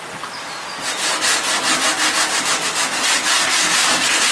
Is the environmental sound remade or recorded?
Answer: recorded